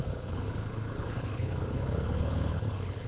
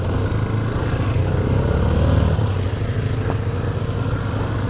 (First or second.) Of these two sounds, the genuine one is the second